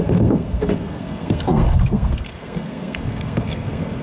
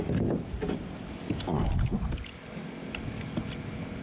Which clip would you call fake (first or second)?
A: first